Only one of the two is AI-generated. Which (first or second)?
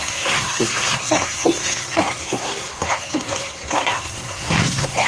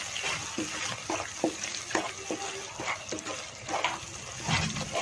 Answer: first